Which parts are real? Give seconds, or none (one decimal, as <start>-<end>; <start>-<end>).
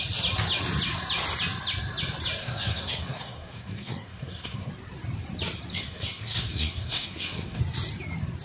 0.0-2.4; 4.7-5.7; 7.6-8.4